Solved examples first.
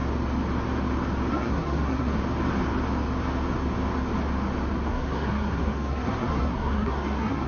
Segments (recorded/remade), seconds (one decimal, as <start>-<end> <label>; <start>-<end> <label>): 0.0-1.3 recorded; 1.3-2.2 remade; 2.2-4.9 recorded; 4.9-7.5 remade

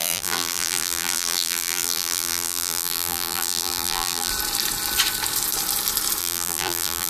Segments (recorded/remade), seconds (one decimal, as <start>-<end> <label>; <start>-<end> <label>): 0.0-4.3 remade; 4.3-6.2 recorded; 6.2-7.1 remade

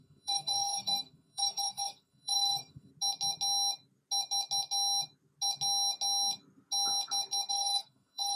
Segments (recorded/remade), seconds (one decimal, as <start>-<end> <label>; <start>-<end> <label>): 0.0-2.9 remade; 2.9-7.5 recorded; 7.5-8.4 remade

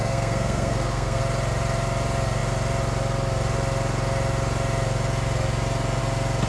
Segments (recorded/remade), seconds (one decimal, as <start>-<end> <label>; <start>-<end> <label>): 0.0-1.2 remade; 1.2-6.5 recorded